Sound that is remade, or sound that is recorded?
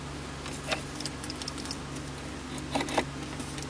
recorded